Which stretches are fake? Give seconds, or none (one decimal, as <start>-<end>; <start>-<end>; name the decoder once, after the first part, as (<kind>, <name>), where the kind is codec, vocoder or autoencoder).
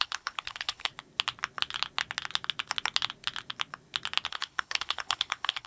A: 0.0-0.9 (codec, HILCodec); 4.3-5.7